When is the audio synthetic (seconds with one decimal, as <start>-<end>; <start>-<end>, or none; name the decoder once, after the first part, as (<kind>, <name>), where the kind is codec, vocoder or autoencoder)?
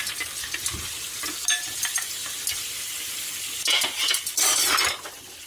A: 2.2-4.2 (vocoder, BigVGAN v2)